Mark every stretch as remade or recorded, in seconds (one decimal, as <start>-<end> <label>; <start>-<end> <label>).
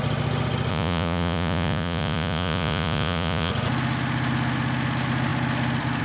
0.0-0.7 recorded; 0.7-3.5 remade; 3.5-6.0 recorded